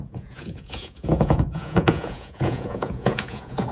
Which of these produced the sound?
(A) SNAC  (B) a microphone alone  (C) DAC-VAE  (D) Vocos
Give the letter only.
D